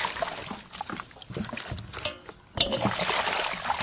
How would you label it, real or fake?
real